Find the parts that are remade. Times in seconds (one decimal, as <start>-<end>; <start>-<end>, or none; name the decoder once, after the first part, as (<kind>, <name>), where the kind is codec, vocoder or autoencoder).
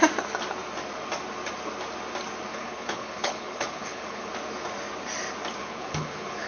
2.5-4.3 (codec, HILCodec); 5.6-6.5